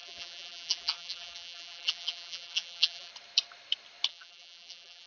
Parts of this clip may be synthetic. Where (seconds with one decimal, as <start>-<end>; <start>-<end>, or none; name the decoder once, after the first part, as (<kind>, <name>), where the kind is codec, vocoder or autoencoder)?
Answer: 0.0-3.1 (vocoder, BigVGAN v2); 4.1-5.1